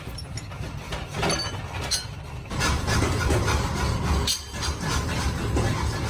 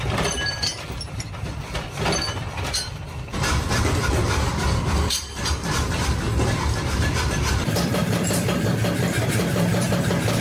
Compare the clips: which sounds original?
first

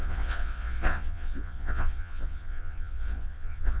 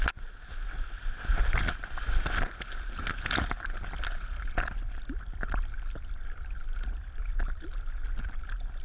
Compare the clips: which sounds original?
second